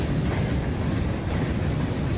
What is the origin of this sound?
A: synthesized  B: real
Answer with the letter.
B